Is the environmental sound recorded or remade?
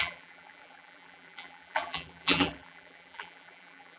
remade